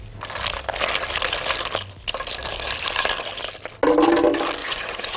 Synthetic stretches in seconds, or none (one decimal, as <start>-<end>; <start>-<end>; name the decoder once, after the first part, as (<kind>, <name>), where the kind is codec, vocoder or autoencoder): 4.6-5.2 (vocoder, Vocos)